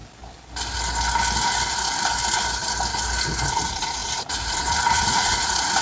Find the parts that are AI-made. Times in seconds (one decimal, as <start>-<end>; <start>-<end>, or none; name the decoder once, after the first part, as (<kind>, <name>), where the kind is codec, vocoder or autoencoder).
3.5-5.8 (vocoder, Vocos)